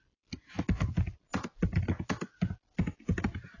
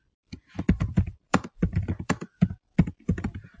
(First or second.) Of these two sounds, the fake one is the second